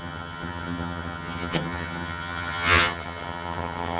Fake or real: fake